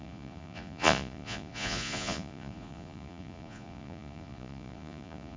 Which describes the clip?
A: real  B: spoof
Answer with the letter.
B